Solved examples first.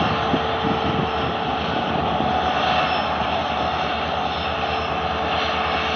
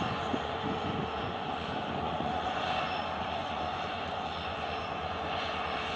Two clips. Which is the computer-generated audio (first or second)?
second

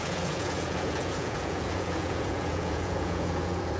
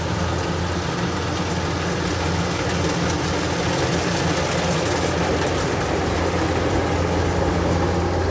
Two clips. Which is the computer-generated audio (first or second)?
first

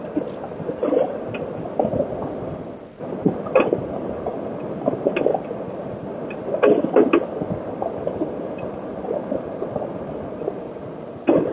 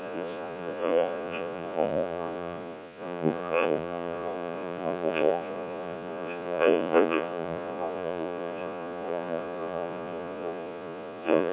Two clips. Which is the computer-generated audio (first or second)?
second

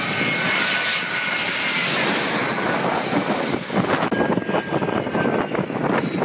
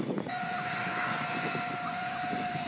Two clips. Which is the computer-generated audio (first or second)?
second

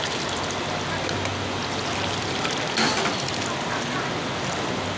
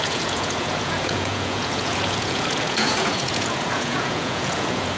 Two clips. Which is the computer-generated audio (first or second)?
second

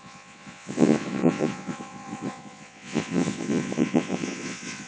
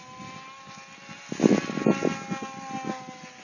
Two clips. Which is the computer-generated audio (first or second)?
first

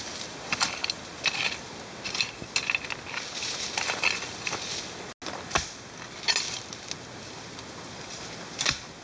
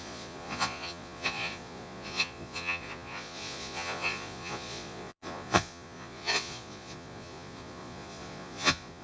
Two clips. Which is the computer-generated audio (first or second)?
second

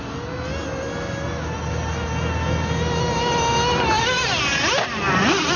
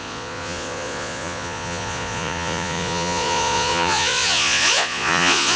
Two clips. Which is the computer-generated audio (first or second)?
second